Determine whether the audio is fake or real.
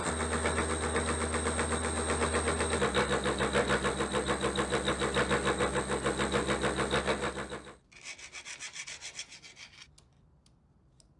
real